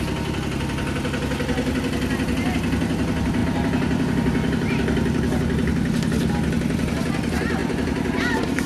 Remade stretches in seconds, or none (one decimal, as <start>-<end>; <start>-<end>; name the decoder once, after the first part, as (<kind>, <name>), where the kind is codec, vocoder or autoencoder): none